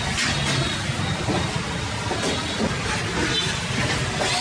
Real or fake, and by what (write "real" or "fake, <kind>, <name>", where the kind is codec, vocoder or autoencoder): real